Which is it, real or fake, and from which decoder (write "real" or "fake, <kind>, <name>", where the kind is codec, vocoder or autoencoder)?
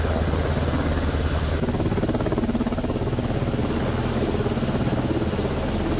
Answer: real